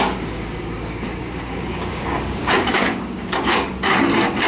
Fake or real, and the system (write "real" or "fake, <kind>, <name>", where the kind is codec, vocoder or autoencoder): fake, codec, DAC